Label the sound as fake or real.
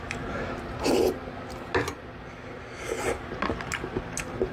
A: real